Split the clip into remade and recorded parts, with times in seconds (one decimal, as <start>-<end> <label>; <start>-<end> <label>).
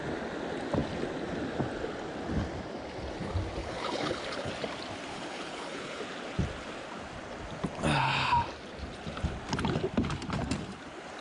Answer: 0.0-3.6 recorded; 3.6-4.5 remade; 4.5-5.1 recorded; 5.1-6.0 remade; 6.0-11.2 recorded